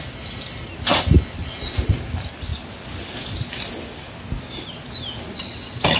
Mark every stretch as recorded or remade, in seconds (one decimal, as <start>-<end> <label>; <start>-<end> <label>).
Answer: 0.0-6.0 recorded